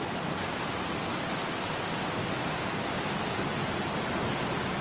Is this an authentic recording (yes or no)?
yes